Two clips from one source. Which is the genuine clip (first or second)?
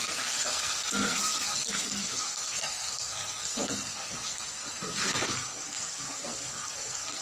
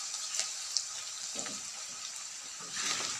second